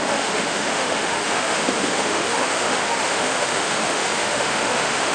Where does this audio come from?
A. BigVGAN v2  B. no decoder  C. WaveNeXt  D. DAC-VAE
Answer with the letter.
D